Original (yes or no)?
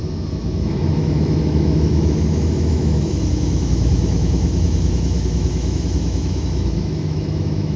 no